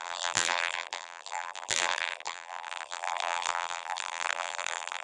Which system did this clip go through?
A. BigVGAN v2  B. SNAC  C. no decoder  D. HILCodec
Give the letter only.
A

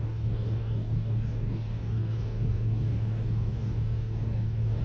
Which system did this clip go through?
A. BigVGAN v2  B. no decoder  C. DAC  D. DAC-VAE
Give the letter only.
C